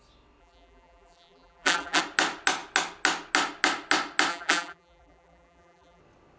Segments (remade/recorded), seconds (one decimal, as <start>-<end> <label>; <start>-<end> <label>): 0.0-0.4 recorded; 0.4-2.0 remade; 2.0-4.3 recorded; 4.3-6.0 remade; 6.0-6.4 recorded